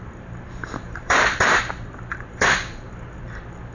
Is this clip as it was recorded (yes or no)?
no